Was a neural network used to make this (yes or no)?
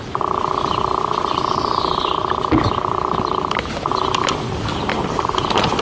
no